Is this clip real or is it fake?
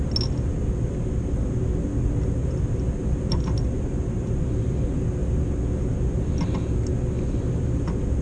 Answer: real